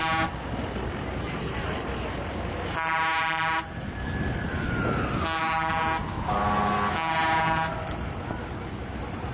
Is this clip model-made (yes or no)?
no